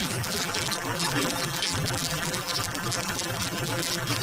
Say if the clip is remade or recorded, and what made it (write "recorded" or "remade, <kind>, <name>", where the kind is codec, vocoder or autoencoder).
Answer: remade, vocoder, BigVGAN v2